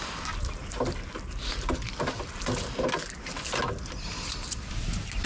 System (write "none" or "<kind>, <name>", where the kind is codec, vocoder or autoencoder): none